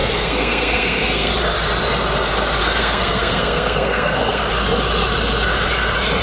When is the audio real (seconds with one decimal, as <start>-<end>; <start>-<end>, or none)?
1.3-2.6; 4.4-6.2